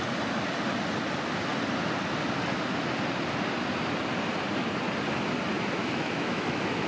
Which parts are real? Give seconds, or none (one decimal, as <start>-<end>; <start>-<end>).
0.0-5.8